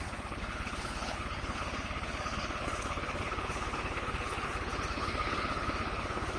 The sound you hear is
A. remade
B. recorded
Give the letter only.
A